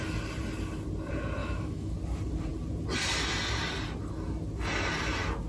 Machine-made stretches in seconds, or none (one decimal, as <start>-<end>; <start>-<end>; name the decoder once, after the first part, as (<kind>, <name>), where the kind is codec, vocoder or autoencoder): 1.4-1.9 (autoencoder, DAC-VAE)